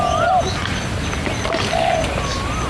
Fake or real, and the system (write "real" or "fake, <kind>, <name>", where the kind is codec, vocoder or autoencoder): real